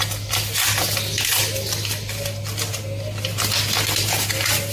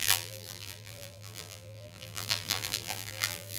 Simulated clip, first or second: second